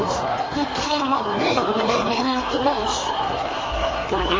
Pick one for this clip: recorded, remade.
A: remade